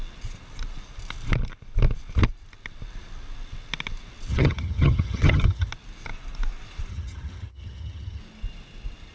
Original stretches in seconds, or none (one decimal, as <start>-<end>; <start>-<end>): 0.0-4.3; 5.7-6.9; 8.2-9.1